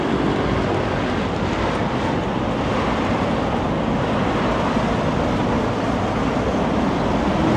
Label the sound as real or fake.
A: real